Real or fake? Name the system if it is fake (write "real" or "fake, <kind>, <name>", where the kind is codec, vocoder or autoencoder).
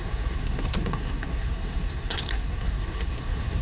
fake, codec, SNAC